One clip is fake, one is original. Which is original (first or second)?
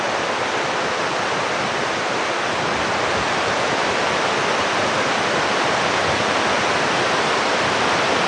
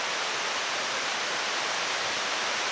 first